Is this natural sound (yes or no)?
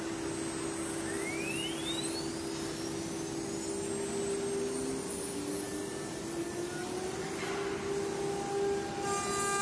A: yes